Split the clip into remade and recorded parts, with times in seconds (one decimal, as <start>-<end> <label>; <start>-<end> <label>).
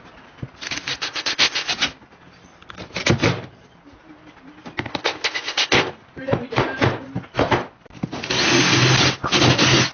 0.0-1.0 recorded; 1.0-1.7 remade; 1.7-4.9 recorded; 4.9-5.9 remade; 5.9-9.9 recorded